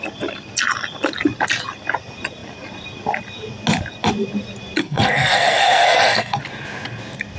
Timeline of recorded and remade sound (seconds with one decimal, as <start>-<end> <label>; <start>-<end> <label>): 0.0-4.8 recorded; 4.8-6.4 remade; 6.4-7.4 recorded